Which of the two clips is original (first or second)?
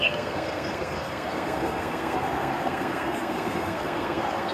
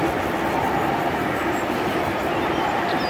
second